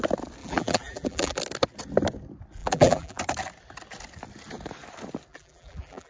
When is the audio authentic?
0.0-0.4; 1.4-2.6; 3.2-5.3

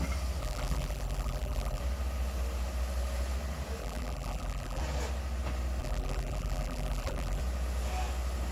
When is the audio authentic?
0.0-0.4; 1.8-3.8; 4.8-5.8; 7.4-8.5

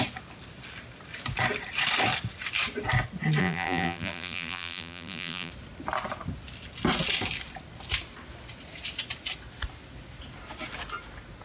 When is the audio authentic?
0.0-3.4; 5.5-11.4

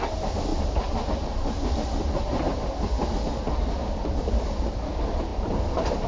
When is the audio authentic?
0.5-4.2

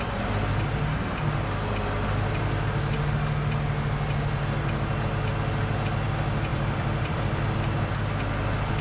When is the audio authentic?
0.0-6.5; 7.9-8.8

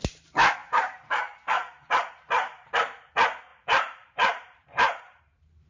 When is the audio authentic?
0.0-0.6; 3.1-3.5

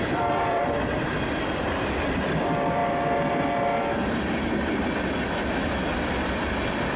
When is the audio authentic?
2.8-6.1

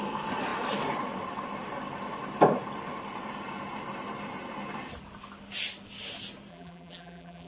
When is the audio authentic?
0.0-6.5